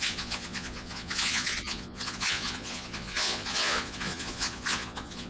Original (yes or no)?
no